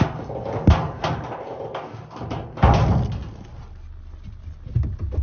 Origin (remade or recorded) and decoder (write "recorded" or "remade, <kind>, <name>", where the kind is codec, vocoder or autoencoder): recorded